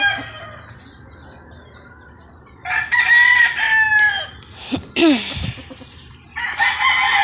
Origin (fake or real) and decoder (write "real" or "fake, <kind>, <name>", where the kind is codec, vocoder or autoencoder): real